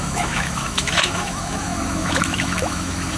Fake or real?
fake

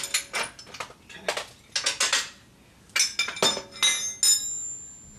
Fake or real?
real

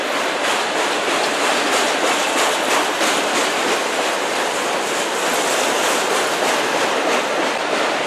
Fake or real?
real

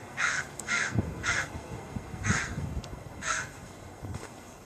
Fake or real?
fake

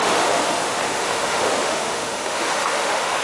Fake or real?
fake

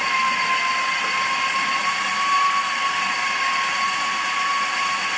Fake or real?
real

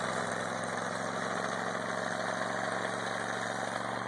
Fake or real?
real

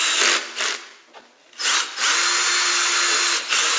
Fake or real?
real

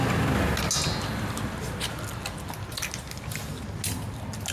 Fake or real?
real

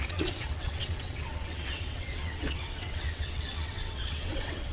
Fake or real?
fake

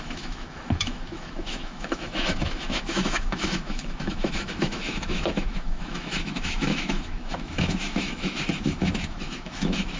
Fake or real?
fake